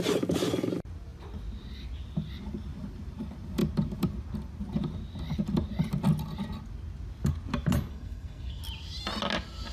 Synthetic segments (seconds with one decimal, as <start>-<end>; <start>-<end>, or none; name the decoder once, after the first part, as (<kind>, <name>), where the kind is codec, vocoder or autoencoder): 7.9-8.6 (codec, SNAC)